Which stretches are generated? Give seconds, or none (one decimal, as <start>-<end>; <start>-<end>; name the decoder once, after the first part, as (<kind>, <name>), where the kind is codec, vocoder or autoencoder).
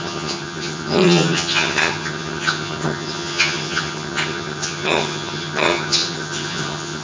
0.0-7.0 (vocoder, HiFi-GAN)